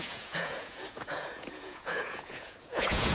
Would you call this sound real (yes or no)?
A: no